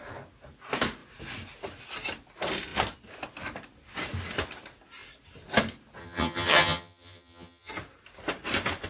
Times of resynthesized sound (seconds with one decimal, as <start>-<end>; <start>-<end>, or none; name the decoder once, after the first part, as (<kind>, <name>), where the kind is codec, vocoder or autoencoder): 6.0-7.7 (vocoder, HiFi-GAN)